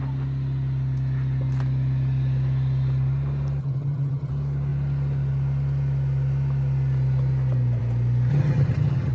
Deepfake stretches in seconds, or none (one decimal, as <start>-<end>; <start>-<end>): 3.6-4.3; 8.3-9.1